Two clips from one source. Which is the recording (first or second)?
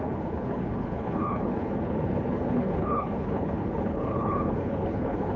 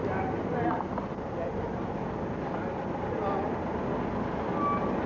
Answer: second